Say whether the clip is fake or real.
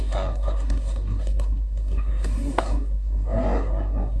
fake